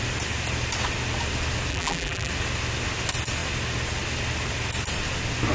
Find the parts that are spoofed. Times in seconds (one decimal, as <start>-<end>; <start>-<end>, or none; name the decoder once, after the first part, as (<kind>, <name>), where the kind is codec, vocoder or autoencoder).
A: 1.7-2.3 (vocoder, BigVGAN v2)